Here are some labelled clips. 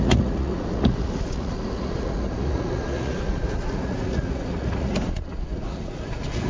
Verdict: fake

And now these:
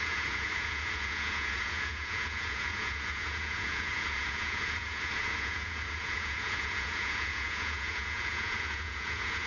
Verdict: fake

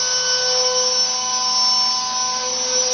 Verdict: real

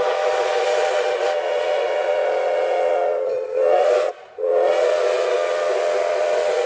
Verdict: fake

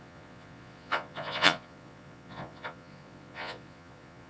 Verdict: fake